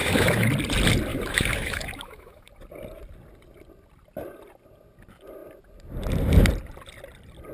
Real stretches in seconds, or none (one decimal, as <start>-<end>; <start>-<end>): 0.5-1.1; 2.5-7.5